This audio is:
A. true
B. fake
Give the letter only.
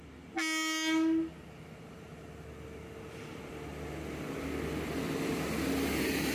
A